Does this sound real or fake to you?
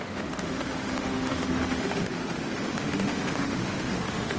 fake